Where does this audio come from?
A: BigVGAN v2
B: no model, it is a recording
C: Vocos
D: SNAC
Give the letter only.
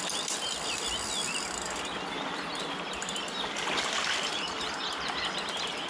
B